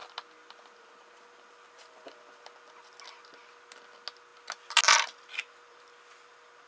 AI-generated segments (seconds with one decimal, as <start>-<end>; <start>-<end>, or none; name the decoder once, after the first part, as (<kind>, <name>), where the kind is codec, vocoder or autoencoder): none